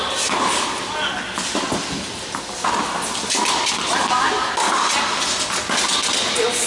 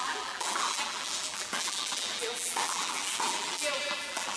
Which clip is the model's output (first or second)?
second